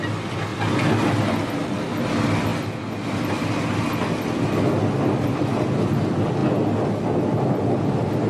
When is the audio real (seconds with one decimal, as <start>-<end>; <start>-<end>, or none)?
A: 0.0-8.3